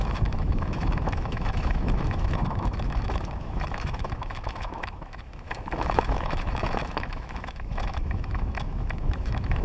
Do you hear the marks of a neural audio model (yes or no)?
yes